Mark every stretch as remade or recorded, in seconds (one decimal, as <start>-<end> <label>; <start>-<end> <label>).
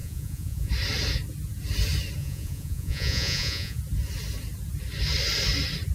0.0-0.7 remade; 0.7-2.2 recorded; 2.2-3.8 remade; 3.8-5.9 recorded